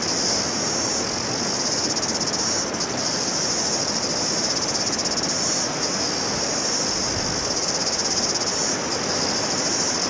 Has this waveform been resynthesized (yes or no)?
no